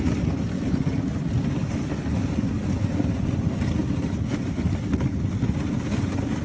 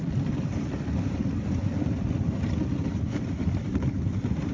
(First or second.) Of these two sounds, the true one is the first